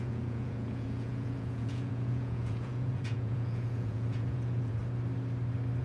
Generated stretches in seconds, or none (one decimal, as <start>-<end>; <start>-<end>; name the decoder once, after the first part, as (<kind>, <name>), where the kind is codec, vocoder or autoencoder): 0.0-4.8 (vocoder, Vocos)